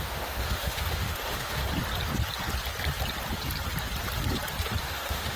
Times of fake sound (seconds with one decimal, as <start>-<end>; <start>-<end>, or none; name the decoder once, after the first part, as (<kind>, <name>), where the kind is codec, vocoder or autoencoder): 0.0-1.6 (autoencoder, DAC-VAE); 4.8-5.4